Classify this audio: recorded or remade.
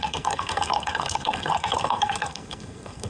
remade